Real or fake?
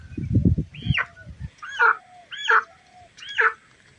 real